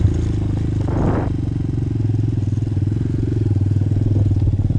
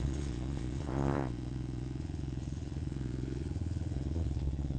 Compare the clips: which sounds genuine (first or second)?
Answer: first